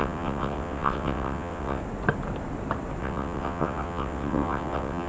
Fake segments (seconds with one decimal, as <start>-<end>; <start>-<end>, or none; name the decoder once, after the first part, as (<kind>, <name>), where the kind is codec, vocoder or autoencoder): 0.0-1.8 (vocoder, WaveNeXt); 3.0-5.1